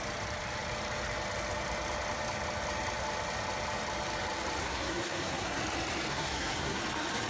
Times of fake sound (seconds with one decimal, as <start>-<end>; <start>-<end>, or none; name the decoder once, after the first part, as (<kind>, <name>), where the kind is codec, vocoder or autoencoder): 4.6-5.6 (codec, SNAC); 6.1-6.8